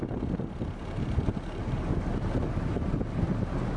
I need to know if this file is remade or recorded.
recorded